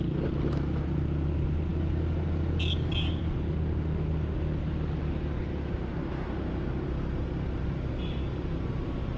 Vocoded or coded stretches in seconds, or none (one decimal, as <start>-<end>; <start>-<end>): none